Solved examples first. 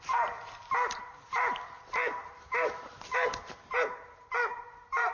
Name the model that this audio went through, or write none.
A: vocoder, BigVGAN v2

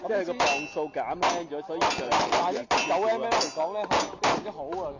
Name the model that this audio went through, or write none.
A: none